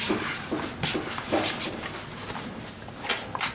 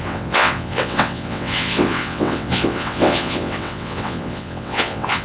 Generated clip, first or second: second